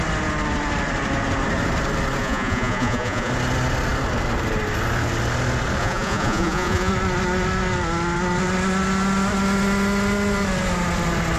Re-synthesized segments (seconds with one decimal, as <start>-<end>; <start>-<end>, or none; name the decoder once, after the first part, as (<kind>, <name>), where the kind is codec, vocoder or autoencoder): 2.2-3.3 (vocoder, Vocos); 5.8-6.9